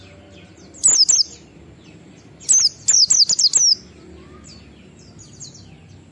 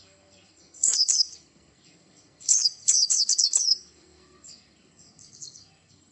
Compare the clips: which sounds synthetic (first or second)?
second